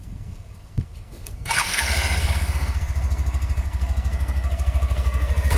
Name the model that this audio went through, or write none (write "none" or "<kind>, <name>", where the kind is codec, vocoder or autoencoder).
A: codec, SNAC